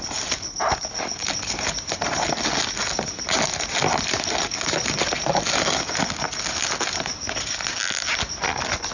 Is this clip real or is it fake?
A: real